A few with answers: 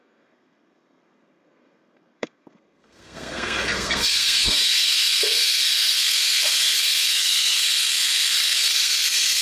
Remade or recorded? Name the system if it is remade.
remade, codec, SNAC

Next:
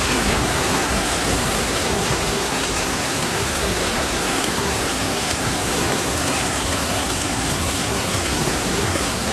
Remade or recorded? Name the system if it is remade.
remade, codec, SNAC